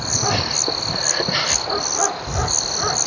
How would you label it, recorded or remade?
recorded